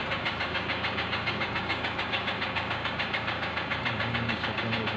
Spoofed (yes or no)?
yes